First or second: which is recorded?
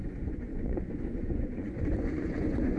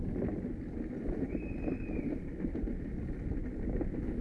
second